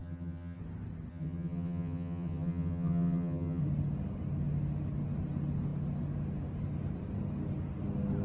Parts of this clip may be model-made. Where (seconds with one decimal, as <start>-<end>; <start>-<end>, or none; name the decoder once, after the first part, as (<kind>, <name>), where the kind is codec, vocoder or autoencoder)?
0.0-0.6 (vocoder, HiFi-GAN); 1.1-3.6